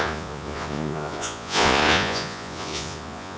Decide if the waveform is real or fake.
fake